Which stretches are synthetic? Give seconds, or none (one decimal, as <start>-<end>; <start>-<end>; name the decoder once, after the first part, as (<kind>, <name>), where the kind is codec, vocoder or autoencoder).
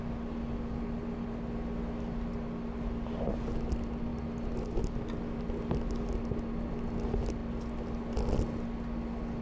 none